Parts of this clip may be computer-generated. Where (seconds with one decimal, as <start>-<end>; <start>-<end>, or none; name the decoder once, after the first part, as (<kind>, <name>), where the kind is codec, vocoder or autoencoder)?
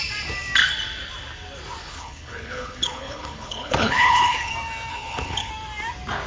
1.8-4.5 (codec, HILCodec); 4.9-5.5